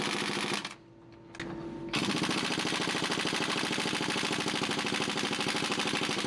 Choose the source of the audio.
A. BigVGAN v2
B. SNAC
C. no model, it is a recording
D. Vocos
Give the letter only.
C